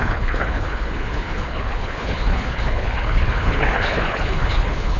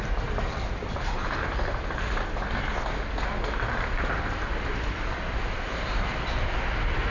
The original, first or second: second